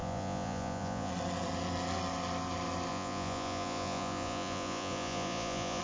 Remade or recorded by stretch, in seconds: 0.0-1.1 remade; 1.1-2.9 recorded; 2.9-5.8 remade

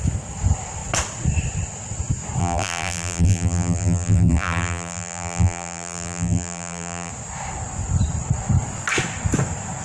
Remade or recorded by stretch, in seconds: 0.0-2.4 recorded; 2.4-7.1 remade; 7.1-9.8 recorded

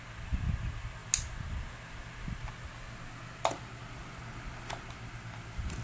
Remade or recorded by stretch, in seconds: 0.0-5.8 recorded

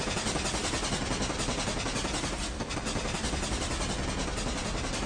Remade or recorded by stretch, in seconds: 0.0-5.1 recorded

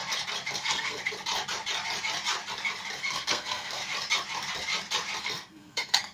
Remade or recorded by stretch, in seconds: 0.0-0.5 recorded; 0.5-1.0 remade; 1.0-3.0 recorded; 3.0-3.8 remade; 3.8-5.2 recorded; 5.2-6.1 remade

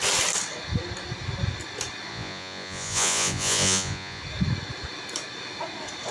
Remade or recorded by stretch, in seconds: 0.0-2.1 recorded; 2.1-4.2 remade; 4.2-6.1 recorded

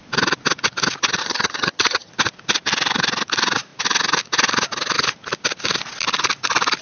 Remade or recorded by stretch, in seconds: 0.0-1.2 recorded; 1.2-2.1 remade; 2.1-6.8 recorded

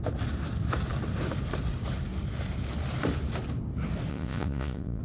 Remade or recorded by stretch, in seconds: 0.0-4.1 recorded; 4.1-5.0 remade